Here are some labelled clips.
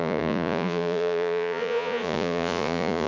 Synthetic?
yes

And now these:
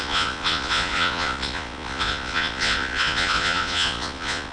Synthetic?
yes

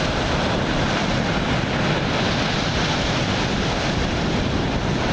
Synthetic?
no